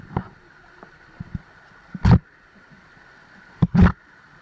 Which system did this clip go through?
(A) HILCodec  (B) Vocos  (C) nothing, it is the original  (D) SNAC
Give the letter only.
C